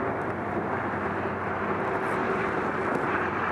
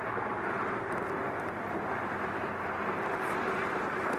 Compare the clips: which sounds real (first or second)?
first